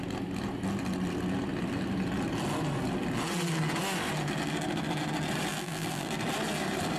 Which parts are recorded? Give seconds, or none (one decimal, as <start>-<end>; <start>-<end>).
0.0-5.5; 6.1-7.0